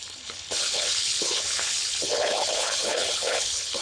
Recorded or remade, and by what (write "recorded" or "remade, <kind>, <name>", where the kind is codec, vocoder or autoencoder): remade, codec, HILCodec